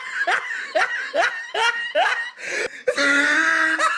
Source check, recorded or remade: recorded